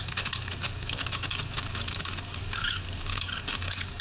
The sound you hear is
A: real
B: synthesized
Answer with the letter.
B